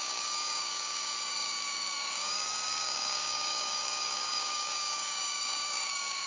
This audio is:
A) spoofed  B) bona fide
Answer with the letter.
A